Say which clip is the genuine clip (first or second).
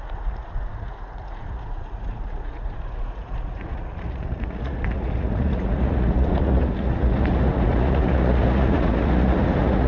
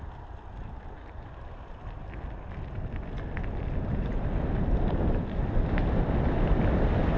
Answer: second